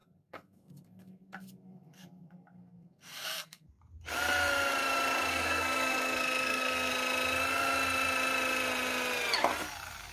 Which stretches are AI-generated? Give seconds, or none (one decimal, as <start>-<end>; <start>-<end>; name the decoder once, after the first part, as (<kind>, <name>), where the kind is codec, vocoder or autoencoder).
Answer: 0.0-3.7 (codec, SNAC); 5.3-6.9